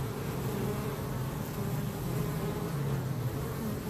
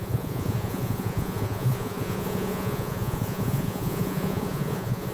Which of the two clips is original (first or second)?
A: first